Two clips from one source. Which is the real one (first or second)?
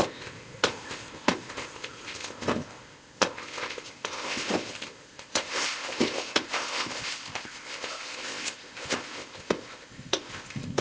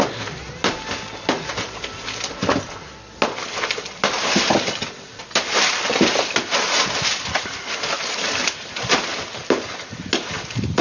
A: second